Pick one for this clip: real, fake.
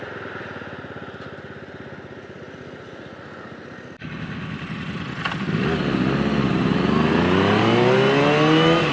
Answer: real